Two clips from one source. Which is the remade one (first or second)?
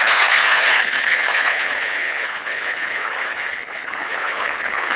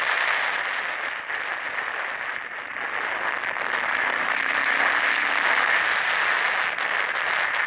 first